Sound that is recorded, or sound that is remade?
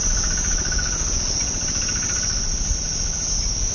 recorded